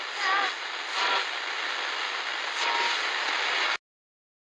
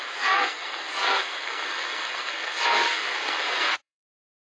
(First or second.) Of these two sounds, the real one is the first